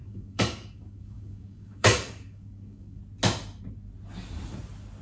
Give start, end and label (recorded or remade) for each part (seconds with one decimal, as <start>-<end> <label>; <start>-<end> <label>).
0.0-3.0 remade; 3.0-5.0 recorded